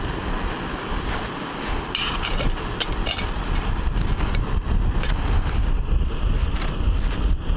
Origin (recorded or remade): recorded